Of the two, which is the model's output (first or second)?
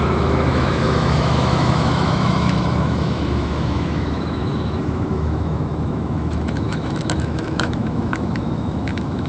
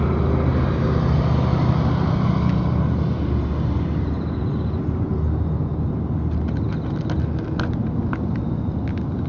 first